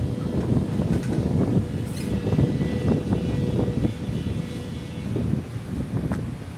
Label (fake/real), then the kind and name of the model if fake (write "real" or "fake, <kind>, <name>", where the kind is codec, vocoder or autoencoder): real